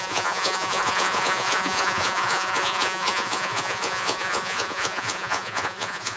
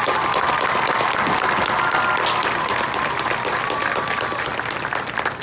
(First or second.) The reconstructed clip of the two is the first